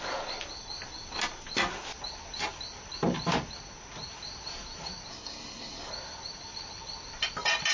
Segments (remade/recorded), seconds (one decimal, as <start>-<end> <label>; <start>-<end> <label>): 0.0-5.1 recorded; 5.1-5.9 remade; 5.9-7.7 recorded